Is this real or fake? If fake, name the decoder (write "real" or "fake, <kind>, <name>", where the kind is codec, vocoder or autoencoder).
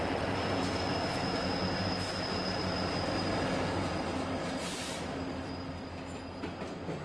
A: real